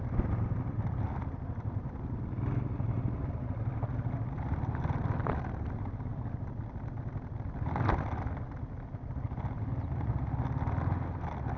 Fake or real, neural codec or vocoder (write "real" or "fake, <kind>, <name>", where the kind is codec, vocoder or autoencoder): real